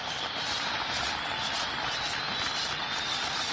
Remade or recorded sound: remade